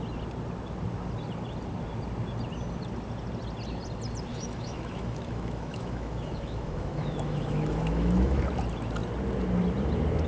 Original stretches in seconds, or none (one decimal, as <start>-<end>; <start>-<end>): 0.0-4.3; 8.4-10.3